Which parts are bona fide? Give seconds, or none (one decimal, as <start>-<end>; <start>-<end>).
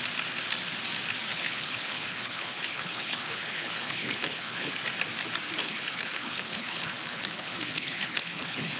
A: 0.0-1.3; 4.7-5.6